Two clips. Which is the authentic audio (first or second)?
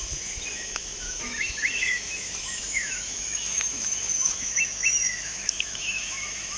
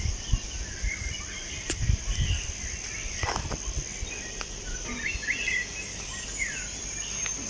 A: second